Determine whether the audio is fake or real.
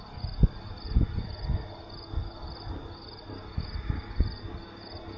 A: real